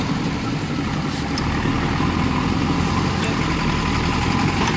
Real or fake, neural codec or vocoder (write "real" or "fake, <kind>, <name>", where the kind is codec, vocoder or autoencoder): real